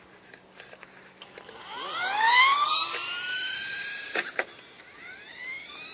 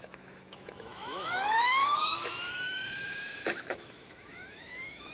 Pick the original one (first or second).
first